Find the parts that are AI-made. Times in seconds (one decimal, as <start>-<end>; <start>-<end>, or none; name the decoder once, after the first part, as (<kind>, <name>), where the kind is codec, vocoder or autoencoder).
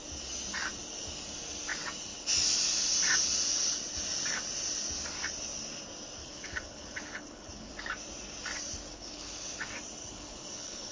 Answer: 6.2-7.7 (codec, HILCodec); 8.9-9.5; 10.0-10.9